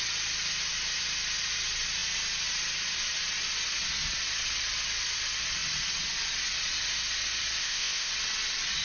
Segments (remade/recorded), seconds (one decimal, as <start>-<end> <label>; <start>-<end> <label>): 0.0-7.6 recorded; 7.6-8.1 remade; 8.1-8.8 recorded